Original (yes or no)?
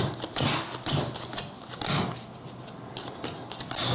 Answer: yes